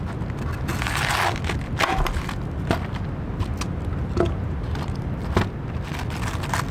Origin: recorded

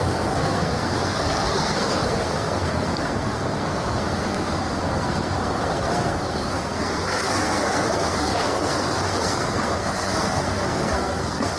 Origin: remade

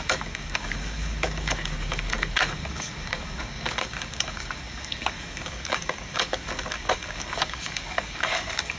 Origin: remade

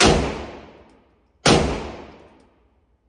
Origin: recorded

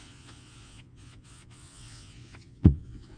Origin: remade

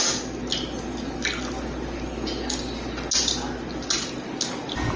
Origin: recorded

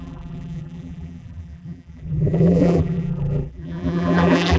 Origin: remade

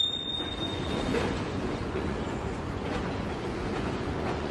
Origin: remade